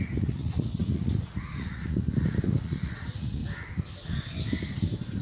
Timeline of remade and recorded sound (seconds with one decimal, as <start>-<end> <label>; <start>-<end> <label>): 0.0-3.4 remade; 3.4-5.2 recorded